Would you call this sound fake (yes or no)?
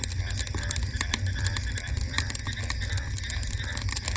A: no